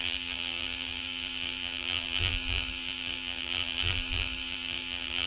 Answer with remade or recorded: remade